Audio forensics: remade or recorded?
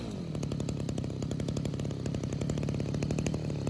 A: recorded